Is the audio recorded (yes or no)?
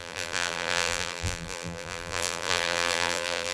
no